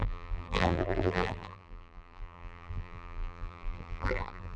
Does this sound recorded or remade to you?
remade